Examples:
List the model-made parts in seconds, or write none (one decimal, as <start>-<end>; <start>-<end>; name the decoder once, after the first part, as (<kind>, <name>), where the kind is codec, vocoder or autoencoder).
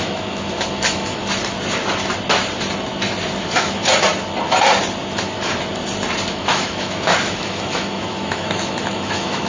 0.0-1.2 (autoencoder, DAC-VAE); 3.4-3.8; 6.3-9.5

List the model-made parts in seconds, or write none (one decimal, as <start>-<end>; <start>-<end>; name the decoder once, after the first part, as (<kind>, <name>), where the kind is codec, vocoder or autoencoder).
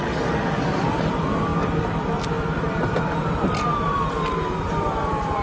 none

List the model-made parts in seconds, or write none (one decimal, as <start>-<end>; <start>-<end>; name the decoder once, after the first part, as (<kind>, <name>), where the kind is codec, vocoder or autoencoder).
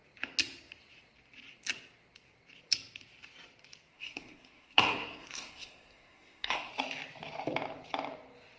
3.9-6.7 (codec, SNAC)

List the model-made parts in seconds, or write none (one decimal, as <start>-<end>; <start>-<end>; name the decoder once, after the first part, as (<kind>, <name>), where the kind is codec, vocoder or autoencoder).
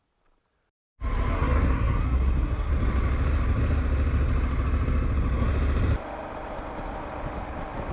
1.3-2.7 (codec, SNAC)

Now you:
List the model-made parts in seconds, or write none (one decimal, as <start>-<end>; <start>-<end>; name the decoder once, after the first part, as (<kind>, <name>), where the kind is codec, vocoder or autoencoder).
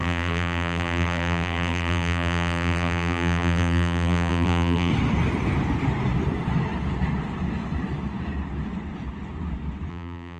0.0-4.9 (vocoder, BigVGAN v2); 9.9-10.4